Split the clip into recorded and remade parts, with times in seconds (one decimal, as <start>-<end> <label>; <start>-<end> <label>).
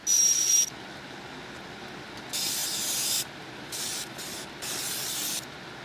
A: 0.0-5.8 recorded